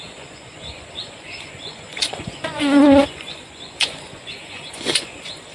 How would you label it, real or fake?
fake